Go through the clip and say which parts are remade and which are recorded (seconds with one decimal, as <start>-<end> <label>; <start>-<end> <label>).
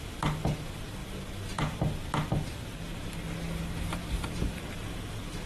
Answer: 0.0-5.5 recorded